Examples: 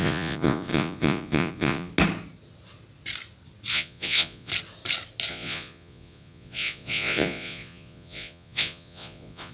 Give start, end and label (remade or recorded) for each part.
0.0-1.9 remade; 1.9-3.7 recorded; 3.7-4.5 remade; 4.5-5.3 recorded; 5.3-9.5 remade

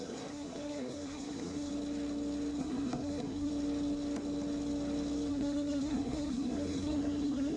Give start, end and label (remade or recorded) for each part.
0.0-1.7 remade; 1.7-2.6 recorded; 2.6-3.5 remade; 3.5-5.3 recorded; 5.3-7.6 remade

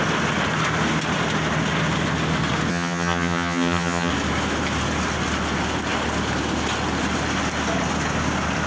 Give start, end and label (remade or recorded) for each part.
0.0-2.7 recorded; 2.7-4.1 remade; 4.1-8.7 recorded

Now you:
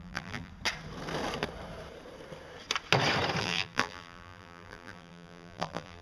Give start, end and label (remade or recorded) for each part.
0.0-0.5 remade; 0.5-3.4 recorded; 3.4-6.0 remade